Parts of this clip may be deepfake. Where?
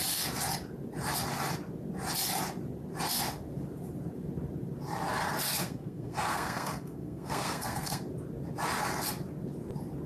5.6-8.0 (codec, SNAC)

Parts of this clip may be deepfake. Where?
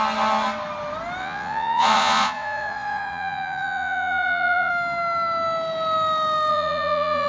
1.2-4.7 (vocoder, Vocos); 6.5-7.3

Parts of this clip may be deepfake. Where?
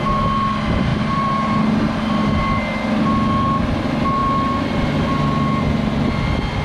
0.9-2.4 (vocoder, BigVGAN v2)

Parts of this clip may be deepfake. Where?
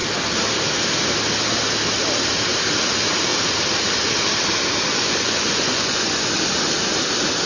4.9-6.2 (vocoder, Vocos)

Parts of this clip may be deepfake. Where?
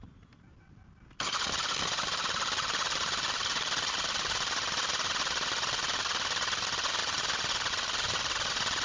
none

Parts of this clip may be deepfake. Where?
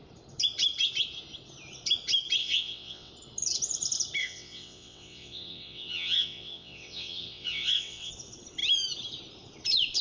2.4-3.1 (vocoder, WaveNeXt); 4.2-8.1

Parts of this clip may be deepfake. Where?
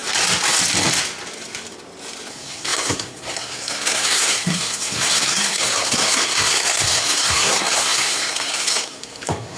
2.3-9.6 (codec, SNAC)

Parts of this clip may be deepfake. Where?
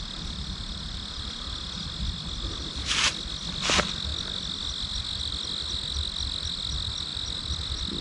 none